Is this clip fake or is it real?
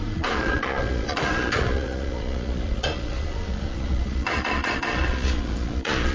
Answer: fake